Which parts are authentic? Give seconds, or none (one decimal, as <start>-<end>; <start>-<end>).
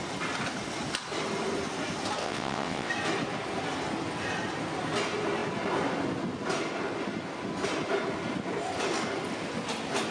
0.0-2.2; 2.9-10.1